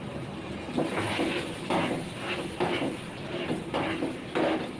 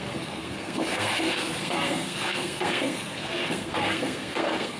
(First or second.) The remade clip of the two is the second